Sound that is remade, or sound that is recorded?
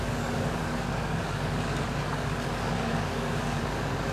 remade